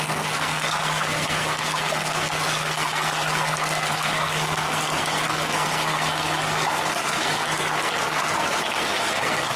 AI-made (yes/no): yes